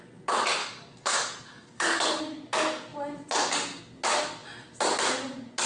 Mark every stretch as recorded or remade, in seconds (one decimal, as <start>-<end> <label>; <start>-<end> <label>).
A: 0.0-0.6 recorded; 0.6-2.2 remade; 2.2-5.7 recorded